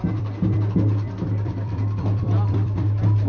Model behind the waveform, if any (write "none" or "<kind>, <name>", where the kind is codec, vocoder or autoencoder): vocoder, BigVGAN v2